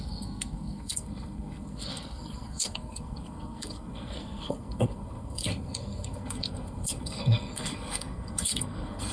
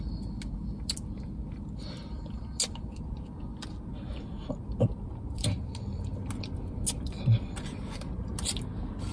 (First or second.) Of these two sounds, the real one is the second